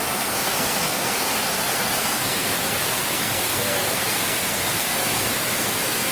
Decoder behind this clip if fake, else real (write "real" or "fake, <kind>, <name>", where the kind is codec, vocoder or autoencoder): fake, codec, SNAC